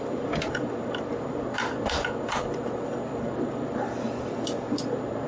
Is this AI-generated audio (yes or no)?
yes